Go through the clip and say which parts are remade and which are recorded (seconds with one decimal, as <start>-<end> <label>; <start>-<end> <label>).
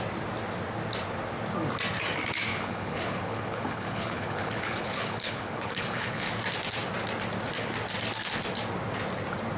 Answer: 0.0-2.5 recorded; 2.5-6.3 remade; 6.3-9.6 recorded